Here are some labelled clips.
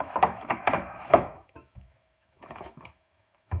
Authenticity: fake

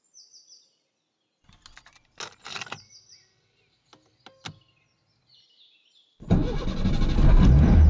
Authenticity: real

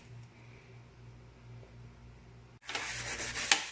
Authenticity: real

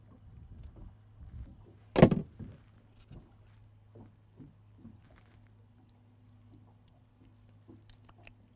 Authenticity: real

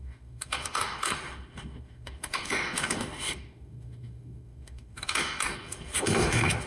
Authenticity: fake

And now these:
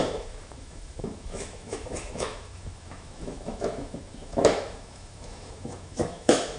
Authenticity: fake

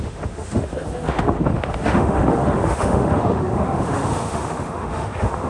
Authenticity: fake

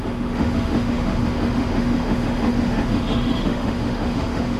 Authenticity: fake